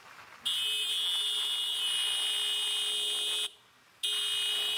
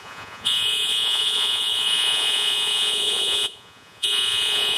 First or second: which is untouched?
first